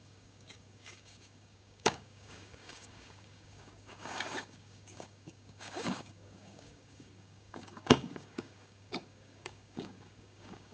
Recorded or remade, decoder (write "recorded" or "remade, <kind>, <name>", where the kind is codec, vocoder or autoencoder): remade, codec, DAC